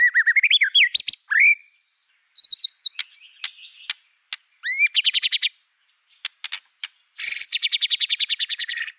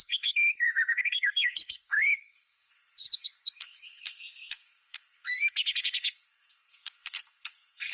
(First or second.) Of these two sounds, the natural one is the first